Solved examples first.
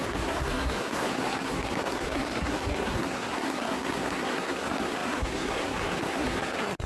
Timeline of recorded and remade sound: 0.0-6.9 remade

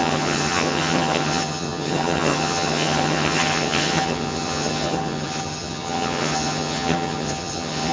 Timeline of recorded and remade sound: 0.0-7.9 remade

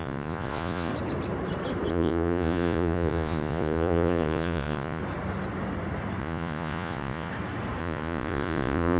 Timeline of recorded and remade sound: 0.0-0.9 remade; 0.9-1.9 recorded; 1.9-5.0 remade; 5.0-6.2 recorded; 6.2-7.3 remade; 7.3-7.8 recorded; 7.8-9.0 remade

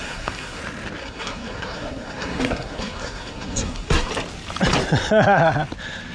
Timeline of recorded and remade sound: 0.0-0.6 remade; 0.6-1.0 recorded; 1.0-4.1 remade; 4.1-6.1 recorded